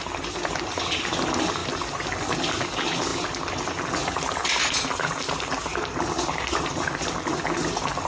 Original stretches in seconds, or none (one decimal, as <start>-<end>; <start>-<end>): 0.0-8.1